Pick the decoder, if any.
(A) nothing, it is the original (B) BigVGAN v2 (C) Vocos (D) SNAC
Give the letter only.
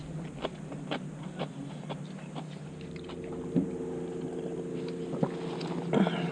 A